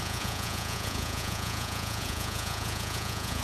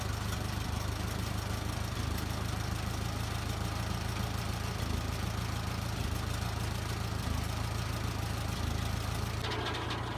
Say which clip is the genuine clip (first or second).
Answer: second